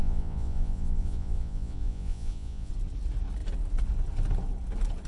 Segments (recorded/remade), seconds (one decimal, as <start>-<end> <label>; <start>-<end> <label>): 0.0-2.7 remade; 2.7-5.1 recorded